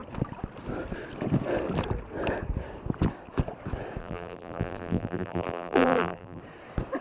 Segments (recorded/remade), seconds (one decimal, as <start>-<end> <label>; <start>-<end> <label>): 0.0-4.0 recorded; 4.0-6.4 remade; 6.4-7.0 recorded